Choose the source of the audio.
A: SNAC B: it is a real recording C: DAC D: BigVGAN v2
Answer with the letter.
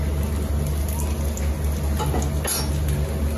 B